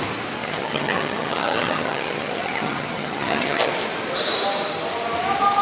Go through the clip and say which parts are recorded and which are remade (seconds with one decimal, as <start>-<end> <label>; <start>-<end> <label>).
0.0-0.4 recorded; 0.4-3.7 remade; 3.7-5.6 recorded